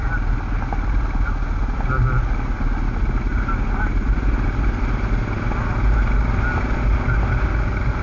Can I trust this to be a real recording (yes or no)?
yes